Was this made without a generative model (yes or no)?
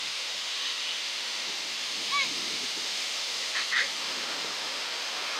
no